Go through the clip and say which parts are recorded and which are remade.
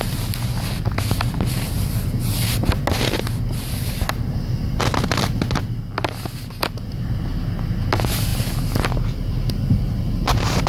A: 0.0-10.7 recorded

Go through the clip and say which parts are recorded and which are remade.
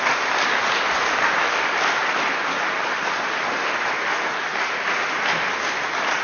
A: 0.0-6.2 recorded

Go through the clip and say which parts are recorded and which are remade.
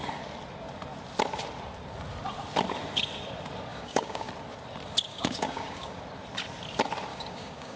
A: 0.0-3.7 recorded; 3.7-4.3 remade; 4.3-5.1 recorded; 5.1-6.0 remade; 6.0-7.1 recorded; 7.1-7.8 remade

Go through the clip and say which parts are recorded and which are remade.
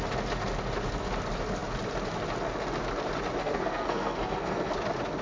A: 0.0-3.4 recorded; 3.4-4.7 remade; 4.7-5.2 recorded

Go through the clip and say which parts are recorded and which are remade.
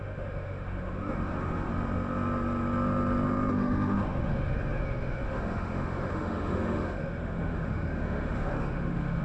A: 0.0-1.7 remade; 1.7-3.5 recorded; 3.5-9.2 remade